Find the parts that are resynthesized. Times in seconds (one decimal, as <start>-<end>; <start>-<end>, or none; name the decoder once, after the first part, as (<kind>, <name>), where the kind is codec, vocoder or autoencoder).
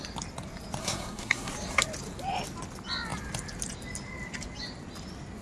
0.8-1.5 (codec, SNAC)